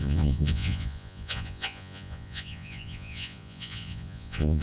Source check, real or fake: fake